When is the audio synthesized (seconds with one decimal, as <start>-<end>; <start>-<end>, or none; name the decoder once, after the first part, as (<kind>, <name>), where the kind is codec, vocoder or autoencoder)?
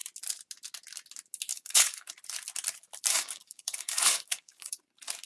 1.5-2.1 (codec, DAC); 3.1-4.8